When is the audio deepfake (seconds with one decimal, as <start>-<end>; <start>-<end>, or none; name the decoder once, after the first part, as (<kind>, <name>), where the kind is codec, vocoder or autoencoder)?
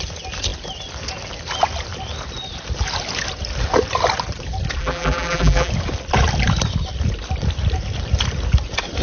4.8-5.7 (vocoder, BigVGAN v2)